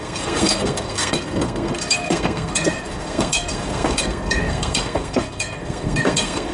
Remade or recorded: remade